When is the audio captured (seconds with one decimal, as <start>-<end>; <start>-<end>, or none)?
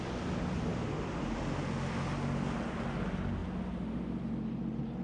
0.0-5.0